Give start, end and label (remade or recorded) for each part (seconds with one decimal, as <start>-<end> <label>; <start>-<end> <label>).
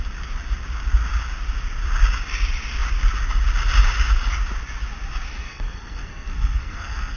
0.0-5.3 recorded; 5.3-7.2 remade